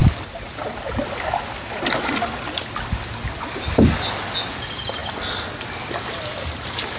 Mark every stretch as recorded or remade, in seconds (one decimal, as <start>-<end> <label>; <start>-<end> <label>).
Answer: 0.0-7.0 recorded